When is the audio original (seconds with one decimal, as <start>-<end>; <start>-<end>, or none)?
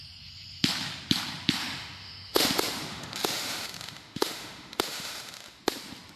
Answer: 0.0-1.6; 2.5-2.9; 5.6-6.2